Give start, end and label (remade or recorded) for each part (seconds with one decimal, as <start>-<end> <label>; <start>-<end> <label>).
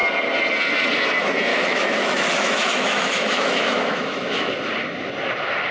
0.0-1.5 recorded; 1.5-4.5 remade; 4.5-5.7 recorded